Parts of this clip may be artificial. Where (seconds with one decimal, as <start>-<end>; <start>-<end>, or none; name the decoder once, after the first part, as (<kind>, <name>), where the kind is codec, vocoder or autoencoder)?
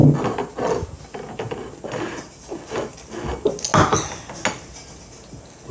none